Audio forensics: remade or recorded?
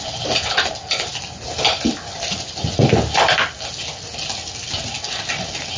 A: recorded